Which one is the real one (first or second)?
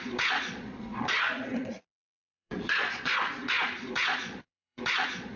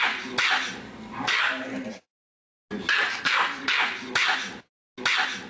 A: second